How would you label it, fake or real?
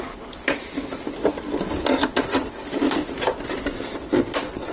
fake